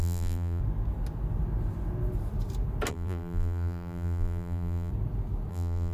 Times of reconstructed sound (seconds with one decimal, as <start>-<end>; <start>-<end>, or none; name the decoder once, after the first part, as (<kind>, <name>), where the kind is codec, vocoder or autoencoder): 0.0-0.6 (vocoder, BigVGAN v2); 2.9-4.9; 5.5-5.9